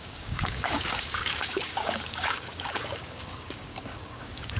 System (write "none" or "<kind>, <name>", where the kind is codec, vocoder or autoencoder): codec, DAC